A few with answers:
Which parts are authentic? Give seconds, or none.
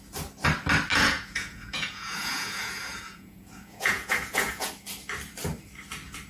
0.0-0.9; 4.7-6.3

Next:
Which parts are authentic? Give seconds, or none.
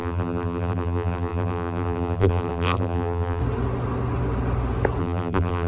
3.4-5.0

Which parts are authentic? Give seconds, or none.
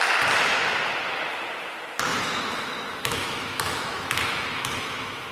0.0-2.1